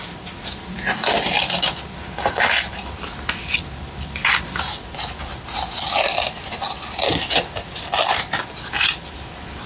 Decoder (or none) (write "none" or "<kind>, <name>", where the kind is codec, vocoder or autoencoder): none